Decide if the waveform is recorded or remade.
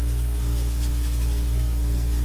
remade